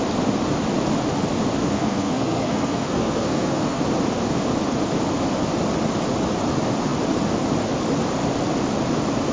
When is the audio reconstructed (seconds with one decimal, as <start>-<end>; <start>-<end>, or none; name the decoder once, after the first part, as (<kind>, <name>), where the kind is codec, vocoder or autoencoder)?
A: 1.6-3.8 (codec, SNAC)